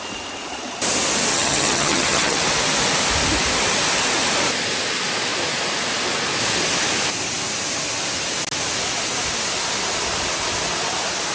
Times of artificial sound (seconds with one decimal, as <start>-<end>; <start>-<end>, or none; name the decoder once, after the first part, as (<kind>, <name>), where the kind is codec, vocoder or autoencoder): 1.3-2.4 (vocoder, HiFi-GAN)